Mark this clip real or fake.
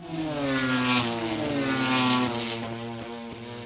real